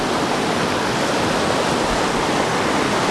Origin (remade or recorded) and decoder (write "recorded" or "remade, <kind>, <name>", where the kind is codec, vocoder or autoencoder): recorded